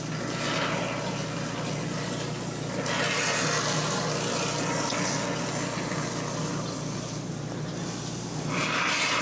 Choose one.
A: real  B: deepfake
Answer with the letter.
A